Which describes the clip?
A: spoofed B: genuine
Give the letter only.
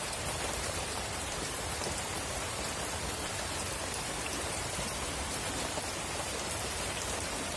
A